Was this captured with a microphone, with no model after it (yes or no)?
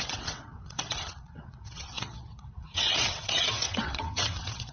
no